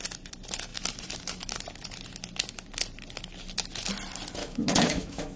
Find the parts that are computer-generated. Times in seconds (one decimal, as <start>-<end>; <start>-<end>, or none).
4.4-5.4